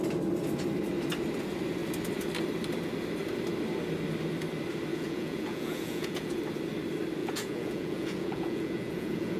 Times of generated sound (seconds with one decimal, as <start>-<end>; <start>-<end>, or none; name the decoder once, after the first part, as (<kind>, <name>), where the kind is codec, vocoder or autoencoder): 4.9-6.4 (vocoder, Vocos); 7.2-9.4